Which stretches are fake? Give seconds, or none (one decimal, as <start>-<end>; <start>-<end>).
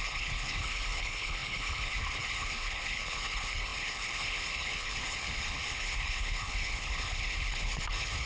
0.0-8.3